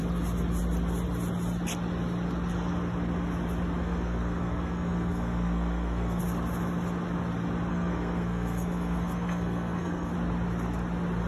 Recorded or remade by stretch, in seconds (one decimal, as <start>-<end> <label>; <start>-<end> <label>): 0.0-3.8 recorded; 3.8-6.2 remade; 6.2-7.7 recorded; 7.7-10.1 remade; 10.1-11.3 recorded